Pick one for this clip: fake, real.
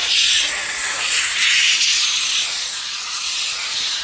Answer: fake